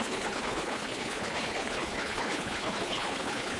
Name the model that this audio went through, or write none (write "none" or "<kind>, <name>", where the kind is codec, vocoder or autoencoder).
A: codec, HILCodec